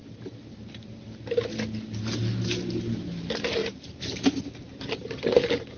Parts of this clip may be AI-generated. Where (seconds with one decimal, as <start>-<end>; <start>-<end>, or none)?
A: 0.0-1.2; 3.6-5.8

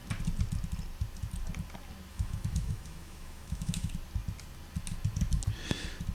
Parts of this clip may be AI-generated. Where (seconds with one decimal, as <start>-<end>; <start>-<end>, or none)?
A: 2.1-3.9

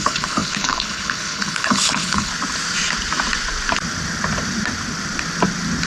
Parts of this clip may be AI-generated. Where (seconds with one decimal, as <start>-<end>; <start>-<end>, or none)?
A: 0.0-2.3

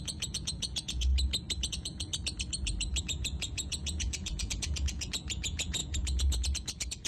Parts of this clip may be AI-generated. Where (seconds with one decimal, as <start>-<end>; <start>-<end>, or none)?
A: 0.0-1.1; 1.7-2.1; 3.0-7.1

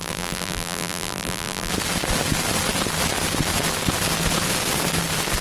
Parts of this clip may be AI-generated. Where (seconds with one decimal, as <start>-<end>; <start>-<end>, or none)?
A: 0.0-1.7

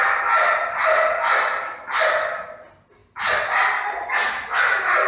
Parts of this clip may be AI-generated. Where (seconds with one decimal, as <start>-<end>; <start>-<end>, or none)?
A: none

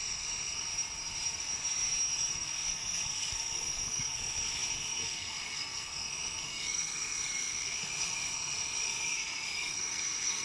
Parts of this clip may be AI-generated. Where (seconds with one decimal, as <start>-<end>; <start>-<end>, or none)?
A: 0.0-0.7; 2.3-10.4